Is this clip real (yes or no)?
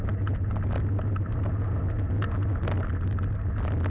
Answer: yes